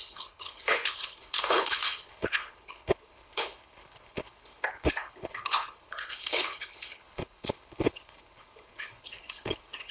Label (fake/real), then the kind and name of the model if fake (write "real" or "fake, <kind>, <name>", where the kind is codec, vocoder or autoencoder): fake, codec, HILCodec